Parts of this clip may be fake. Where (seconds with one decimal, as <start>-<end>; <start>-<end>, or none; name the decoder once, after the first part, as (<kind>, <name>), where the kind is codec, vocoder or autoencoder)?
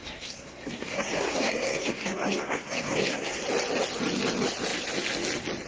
0.0-3.4 (codec, SNAC)